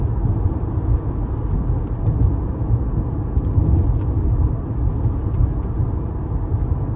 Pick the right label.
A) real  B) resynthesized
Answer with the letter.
A